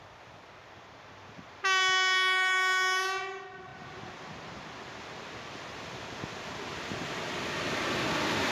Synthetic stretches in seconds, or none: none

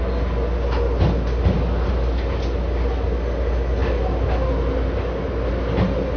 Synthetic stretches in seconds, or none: none

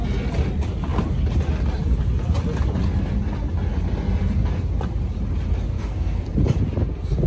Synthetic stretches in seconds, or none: 5.7-6.2 (codec, SNAC)

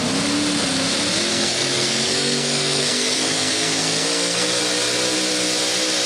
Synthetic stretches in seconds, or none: 1.3-4.6 (codec, SNAC)

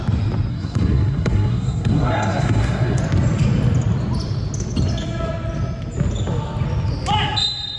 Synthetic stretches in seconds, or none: 0.5-3.0 (codec, SNAC)

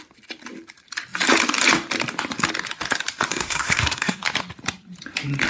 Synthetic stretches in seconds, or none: 3.3-4.2 (codec, SNAC)

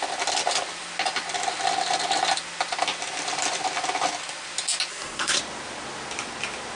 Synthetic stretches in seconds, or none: 4.9-5.4 (codec, SNAC)